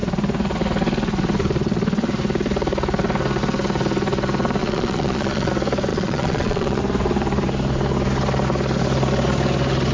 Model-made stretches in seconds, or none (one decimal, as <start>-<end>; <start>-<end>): 4.6-5.5; 5.9-6.8